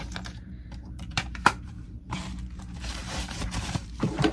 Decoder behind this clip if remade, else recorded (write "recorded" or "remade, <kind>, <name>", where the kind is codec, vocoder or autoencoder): remade, vocoder, BigVGAN v2